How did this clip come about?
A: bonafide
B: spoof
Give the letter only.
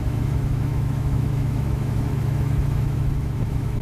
B